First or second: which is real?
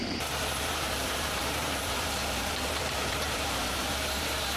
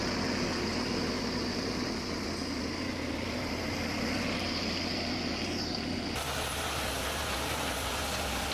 second